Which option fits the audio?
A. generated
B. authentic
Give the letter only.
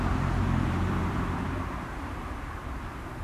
A